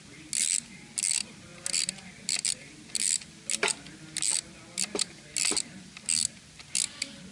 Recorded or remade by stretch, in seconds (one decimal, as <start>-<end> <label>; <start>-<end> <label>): 0.0-7.3 recorded